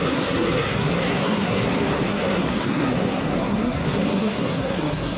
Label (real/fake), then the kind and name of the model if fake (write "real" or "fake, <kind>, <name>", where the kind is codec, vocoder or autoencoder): fake, codec, SNAC